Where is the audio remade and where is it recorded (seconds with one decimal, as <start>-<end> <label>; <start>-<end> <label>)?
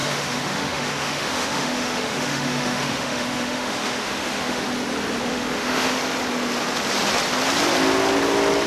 0.0-4.6 remade; 4.6-5.3 recorded; 5.3-6.0 remade; 6.0-8.7 recorded